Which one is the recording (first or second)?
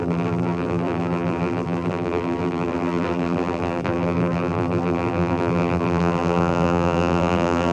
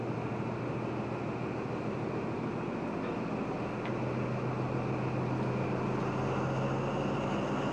second